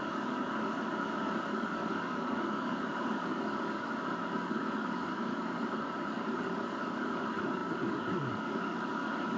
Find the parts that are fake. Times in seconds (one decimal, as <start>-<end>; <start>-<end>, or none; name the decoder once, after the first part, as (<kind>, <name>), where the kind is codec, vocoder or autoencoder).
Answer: 0.0-9.4 (codec, DAC)